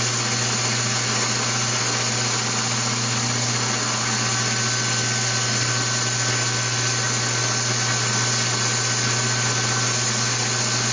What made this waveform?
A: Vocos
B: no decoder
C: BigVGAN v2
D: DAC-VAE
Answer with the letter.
B